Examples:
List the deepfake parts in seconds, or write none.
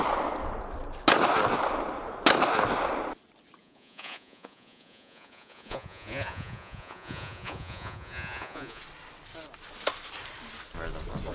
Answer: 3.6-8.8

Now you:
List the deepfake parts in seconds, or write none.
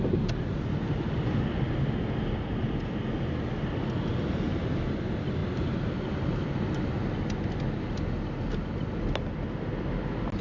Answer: none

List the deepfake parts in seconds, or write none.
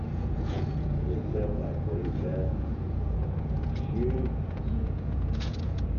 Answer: 0.0-6.0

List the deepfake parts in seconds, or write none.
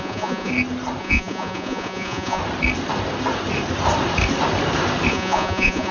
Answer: 0.0-0.5; 1.0-2.4; 5.1-5.9